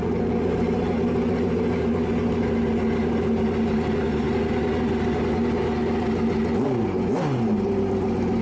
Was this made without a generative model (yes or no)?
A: yes